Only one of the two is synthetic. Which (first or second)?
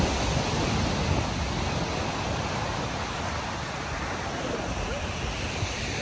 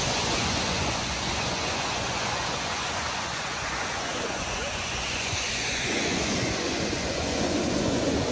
second